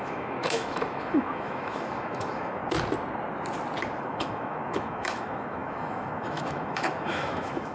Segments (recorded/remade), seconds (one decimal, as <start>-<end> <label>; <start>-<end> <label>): 0.0-2.6 remade; 2.6-4.0 recorded; 4.0-7.7 remade